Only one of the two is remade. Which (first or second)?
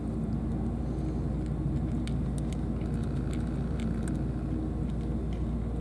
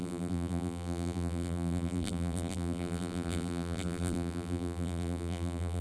second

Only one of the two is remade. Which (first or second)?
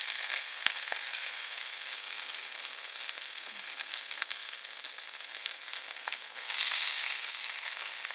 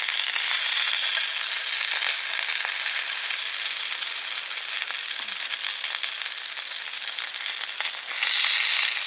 first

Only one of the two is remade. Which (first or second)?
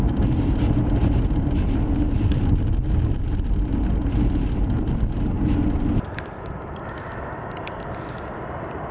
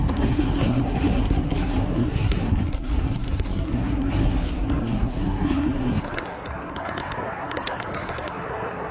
second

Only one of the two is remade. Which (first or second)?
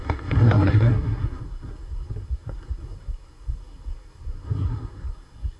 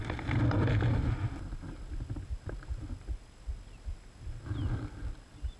first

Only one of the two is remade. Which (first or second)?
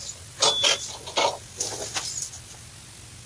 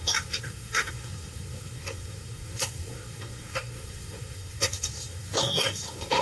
second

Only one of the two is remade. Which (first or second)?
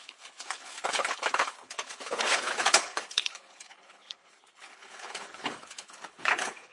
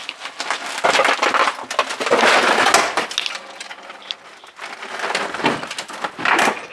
first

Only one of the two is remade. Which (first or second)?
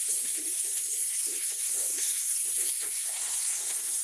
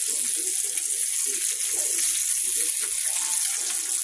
first